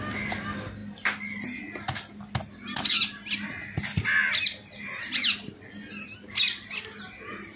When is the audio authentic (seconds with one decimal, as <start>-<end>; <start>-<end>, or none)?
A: 0.0-7.6